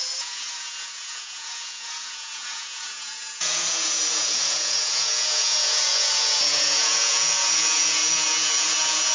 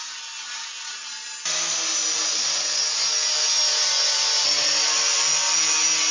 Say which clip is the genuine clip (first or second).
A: second